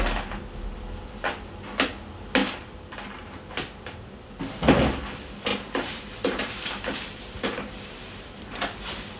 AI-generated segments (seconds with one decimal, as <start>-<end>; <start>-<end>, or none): 2.4-4.4; 5.5-8.6

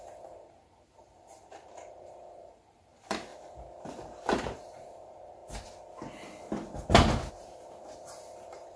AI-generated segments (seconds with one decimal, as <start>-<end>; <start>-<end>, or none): 0.0-3.3; 4.4-5.4; 7.3-8.8

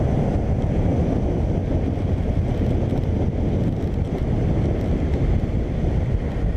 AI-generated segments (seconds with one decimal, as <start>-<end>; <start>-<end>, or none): none